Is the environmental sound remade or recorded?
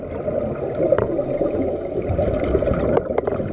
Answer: recorded